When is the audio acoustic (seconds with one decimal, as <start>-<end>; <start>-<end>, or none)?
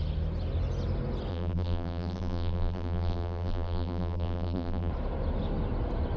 0.0-1.3; 4.9-6.2